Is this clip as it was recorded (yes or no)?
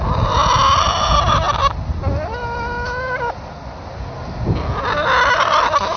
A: yes